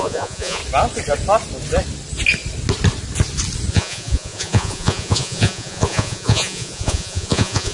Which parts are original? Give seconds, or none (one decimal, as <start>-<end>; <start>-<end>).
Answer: 0.6-3.7